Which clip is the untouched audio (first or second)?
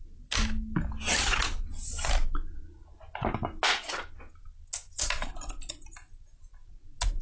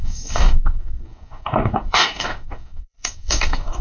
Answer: first